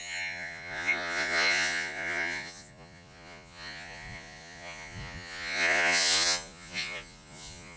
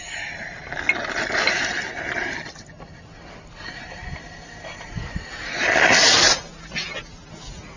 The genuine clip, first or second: second